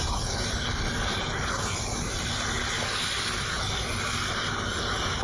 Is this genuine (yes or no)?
yes